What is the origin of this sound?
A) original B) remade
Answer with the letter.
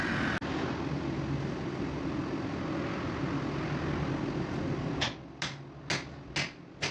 A